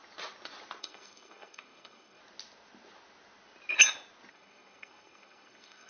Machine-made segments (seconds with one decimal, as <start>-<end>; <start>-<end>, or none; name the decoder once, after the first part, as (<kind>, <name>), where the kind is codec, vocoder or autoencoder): 0.8-2.2 (codec, SNAC); 4.3-5.9